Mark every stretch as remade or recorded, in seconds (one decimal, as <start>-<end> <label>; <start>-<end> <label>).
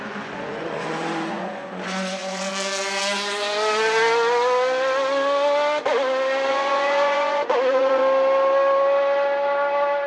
0.0-2.5 remade; 2.5-6.5 recorded; 6.5-8.0 remade; 8.0-10.1 recorded